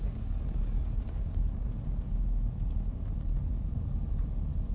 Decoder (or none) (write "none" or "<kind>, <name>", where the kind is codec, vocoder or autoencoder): none